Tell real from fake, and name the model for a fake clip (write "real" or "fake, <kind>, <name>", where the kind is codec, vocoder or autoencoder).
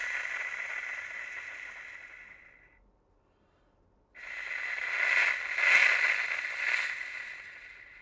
real